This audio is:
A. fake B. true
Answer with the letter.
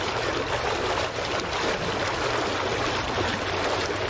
B